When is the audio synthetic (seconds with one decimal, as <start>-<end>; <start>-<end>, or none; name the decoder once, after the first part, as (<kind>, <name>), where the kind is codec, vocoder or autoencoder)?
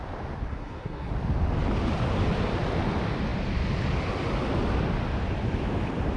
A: 0.5-1.1 (codec, SNAC)